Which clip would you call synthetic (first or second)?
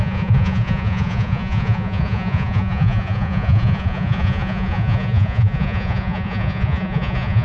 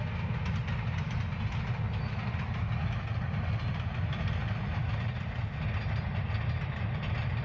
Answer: first